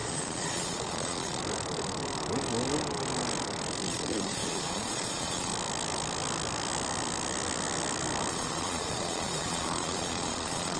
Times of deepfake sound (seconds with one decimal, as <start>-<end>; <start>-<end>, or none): 0.0-1.4; 3.9-5.5; 8.3-10.8